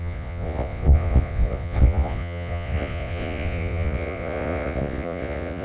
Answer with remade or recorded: remade